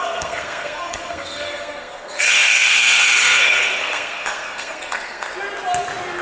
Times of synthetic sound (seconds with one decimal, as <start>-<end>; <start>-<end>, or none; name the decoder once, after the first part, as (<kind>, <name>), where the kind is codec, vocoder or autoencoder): 0.0-5.3 (codec, SNAC)